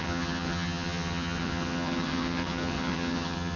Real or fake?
fake